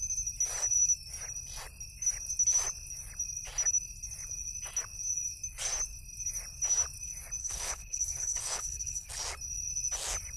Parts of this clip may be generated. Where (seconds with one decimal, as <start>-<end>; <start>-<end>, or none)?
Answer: 7.4-9.1